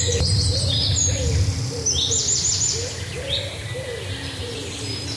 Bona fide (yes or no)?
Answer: yes